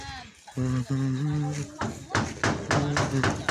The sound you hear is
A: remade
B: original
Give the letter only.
B